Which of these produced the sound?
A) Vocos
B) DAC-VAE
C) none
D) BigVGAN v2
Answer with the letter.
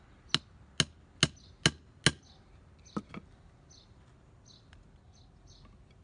C